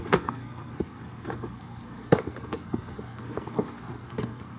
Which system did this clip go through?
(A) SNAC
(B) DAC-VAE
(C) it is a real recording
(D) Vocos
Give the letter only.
A